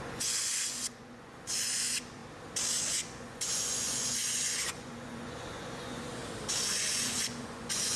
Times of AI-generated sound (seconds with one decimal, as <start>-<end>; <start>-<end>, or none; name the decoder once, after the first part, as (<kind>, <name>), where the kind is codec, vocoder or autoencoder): 0.0-2.2 (vocoder, Vocos); 2.8-6.2; 6.7-8.0